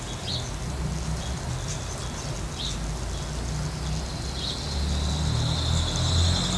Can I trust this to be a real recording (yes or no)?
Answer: yes